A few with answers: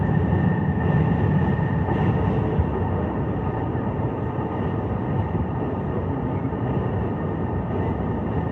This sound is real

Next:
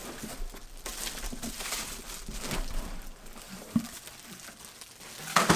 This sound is real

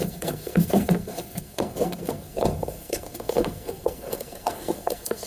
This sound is fake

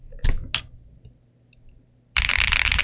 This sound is real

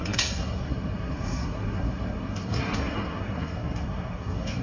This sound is fake